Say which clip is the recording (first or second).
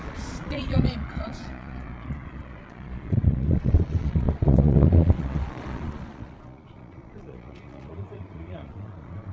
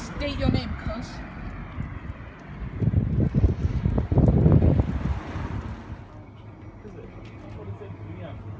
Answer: second